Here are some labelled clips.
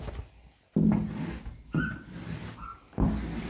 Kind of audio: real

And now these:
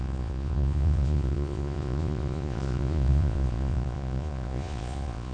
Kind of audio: fake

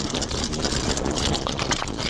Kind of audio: fake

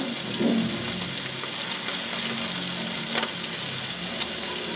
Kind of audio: real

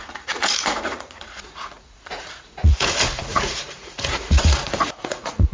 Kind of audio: fake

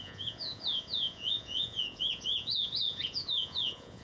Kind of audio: fake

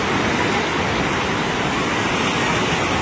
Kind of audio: real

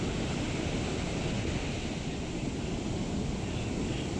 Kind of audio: real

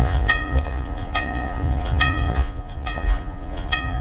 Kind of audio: fake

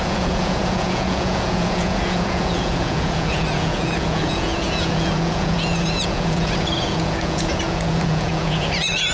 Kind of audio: fake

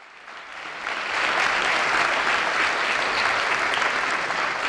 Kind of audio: real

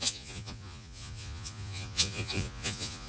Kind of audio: fake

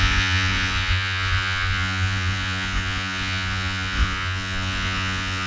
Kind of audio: fake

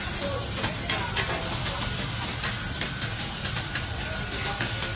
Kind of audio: real